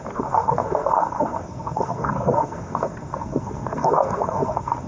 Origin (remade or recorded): remade